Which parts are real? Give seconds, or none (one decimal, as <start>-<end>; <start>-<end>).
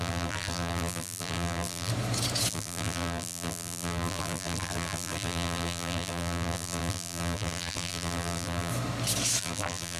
1.9-2.5; 8.7-9.4